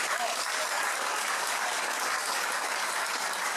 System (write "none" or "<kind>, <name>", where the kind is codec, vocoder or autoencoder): codec, DAC